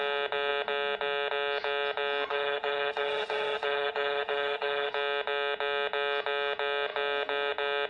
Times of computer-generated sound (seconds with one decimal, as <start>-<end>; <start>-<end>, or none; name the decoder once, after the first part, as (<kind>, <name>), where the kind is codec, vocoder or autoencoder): 2.3-4.9 (autoencoder, DAC-VAE)